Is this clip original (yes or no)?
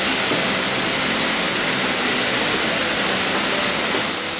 yes